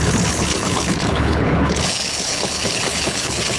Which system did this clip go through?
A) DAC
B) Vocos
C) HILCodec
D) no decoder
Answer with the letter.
C